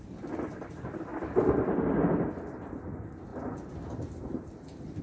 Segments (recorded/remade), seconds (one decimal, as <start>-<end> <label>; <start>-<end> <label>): 0.0-5.0 recorded